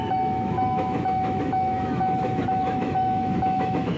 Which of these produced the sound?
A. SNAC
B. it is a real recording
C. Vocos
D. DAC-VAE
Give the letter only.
D